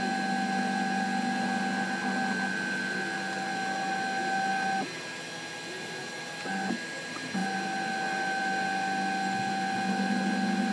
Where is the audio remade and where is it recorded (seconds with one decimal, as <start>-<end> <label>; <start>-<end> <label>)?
0.0-10.7 recorded